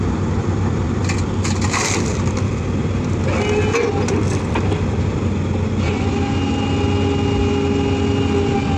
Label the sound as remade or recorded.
recorded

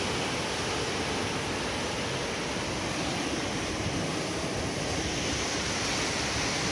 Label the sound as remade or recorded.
recorded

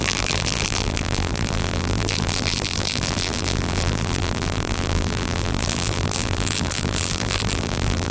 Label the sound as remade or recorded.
remade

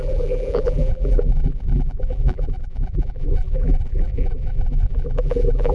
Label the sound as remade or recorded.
remade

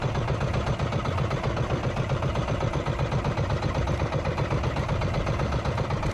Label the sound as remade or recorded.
recorded